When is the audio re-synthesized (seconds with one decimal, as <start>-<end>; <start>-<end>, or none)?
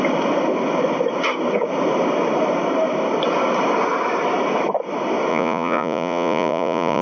5.3-7.0